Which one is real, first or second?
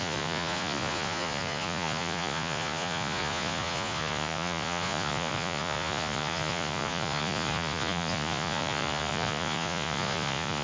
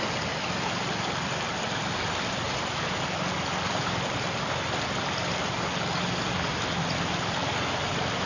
second